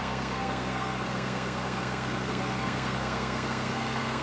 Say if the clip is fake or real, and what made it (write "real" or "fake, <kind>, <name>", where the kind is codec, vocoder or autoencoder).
fake, codec, SNAC